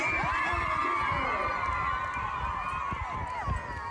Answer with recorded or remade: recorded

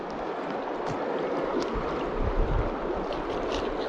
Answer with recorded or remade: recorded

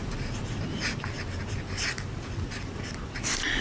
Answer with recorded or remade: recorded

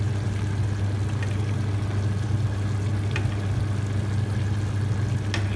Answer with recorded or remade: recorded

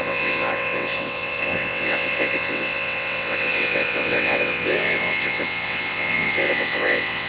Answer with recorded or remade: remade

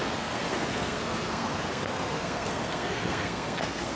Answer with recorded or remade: remade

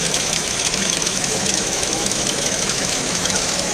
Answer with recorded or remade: remade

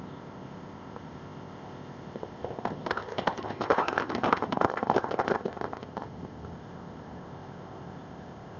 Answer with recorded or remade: remade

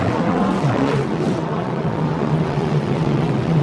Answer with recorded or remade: remade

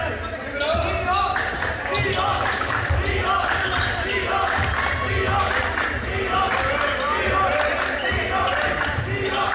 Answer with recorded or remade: recorded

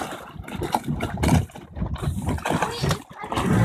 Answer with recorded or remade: recorded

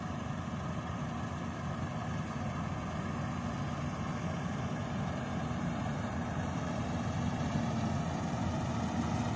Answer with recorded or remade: recorded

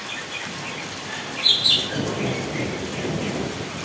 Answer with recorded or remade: recorded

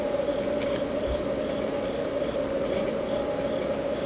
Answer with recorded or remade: remade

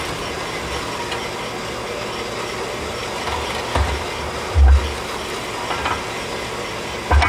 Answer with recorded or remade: recorded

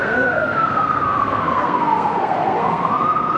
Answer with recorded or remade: remade